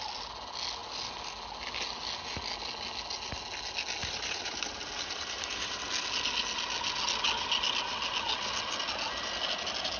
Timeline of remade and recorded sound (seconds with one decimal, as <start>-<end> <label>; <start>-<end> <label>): 0.0-4.0 recorded; 4.0-5.9 remade; 5.9-10.0 recorded